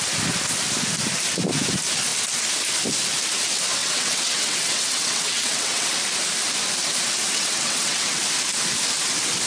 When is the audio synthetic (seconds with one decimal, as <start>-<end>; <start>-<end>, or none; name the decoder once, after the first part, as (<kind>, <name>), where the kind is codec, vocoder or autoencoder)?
3.8-5.9 (vocoder, WaveNeXt); 7.3-8.2